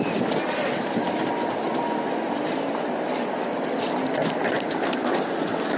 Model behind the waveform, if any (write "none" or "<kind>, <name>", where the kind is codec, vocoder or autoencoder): none